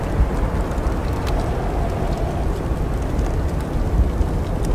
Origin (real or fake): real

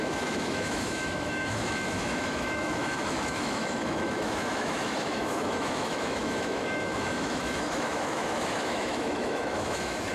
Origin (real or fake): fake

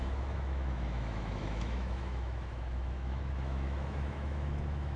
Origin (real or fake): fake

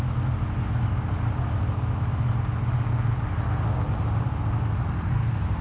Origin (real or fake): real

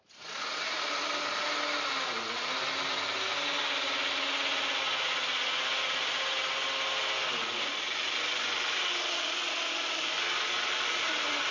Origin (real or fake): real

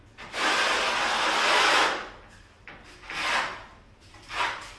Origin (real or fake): real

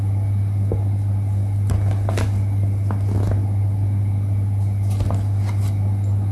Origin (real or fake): real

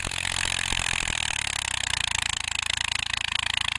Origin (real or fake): real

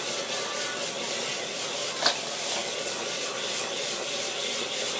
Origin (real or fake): real